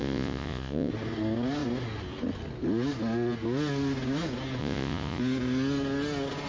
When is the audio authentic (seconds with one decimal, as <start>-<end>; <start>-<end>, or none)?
0.9-4.6; 5.2-6.5